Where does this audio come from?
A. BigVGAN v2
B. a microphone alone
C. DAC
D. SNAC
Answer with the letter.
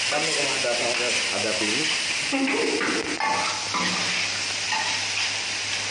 A